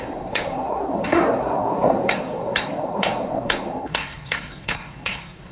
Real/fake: fake